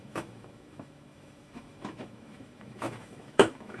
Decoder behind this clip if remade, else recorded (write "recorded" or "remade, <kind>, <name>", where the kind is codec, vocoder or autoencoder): remade, autoencoder, DAC-VAE